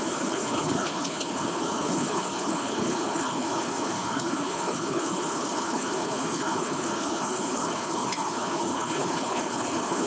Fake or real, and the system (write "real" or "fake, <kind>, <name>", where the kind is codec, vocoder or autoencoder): fake, codec, HILCodec